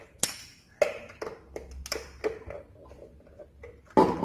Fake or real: real